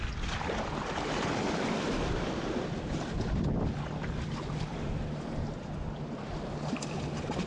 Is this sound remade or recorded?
recorded